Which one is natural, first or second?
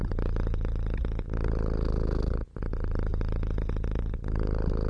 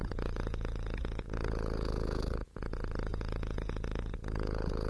first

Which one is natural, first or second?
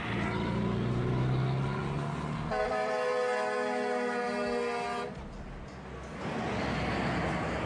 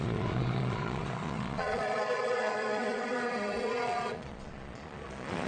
first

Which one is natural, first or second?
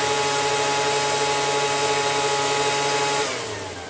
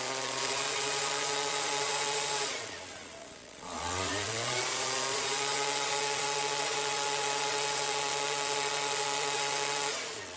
first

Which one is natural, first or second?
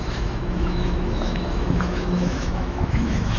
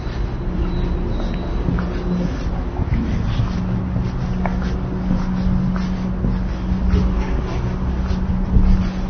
second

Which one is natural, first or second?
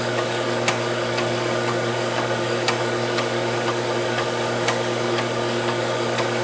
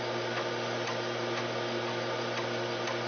second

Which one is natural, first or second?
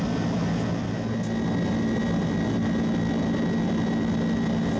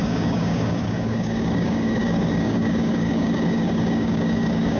first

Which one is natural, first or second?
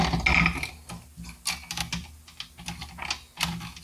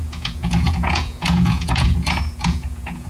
first